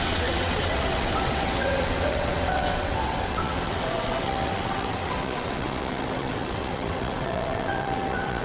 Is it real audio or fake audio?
fake